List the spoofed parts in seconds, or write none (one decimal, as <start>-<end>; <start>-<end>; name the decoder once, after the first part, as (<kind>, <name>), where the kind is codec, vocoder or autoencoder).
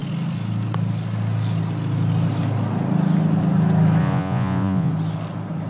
4.0-4.9 (vocoder, Vocos)